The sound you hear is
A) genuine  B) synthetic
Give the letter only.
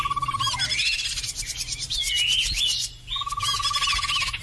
A